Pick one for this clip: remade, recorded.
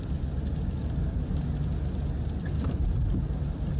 recorded